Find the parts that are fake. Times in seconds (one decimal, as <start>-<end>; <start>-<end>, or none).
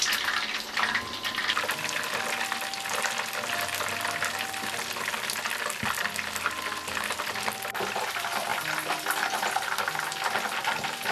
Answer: none